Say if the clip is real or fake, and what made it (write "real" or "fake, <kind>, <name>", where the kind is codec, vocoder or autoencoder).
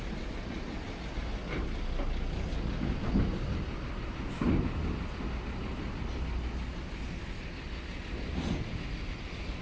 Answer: real